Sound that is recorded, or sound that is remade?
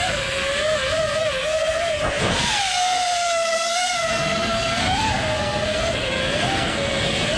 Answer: remade